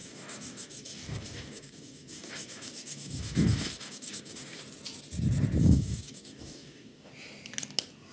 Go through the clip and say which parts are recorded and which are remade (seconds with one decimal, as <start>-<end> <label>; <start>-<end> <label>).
0.0-4.6 remade; 4.6-5.6 recorded; 5.6-7.1 remade; 7.1-8.1 recorded